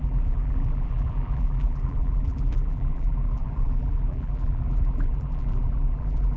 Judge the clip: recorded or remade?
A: remade